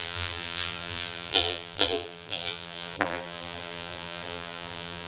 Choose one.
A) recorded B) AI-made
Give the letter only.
B